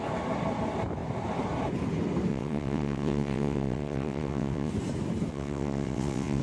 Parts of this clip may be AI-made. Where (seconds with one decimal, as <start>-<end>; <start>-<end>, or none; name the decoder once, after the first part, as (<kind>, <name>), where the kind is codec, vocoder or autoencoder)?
2.3-4.7 (vocoder, WaveNeXt); 5.3-6.4